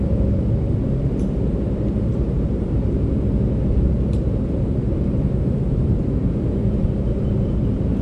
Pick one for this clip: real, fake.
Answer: fake